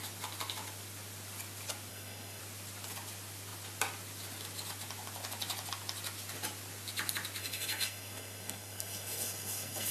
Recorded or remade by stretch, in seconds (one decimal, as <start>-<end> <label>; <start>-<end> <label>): 0.0-1.9 recorded; 1.9-2.4 remade; 2.4-7.4 recorded; 7.4-9.9 remade